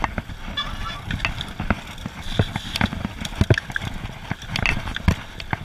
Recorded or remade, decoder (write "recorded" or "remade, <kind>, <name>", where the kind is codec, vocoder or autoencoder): recorded